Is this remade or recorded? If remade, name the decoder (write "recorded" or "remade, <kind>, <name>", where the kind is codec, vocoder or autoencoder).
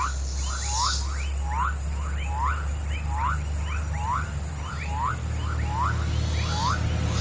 recorded